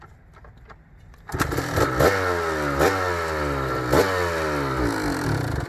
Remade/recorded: recorded